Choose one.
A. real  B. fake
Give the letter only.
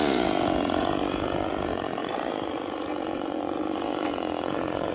B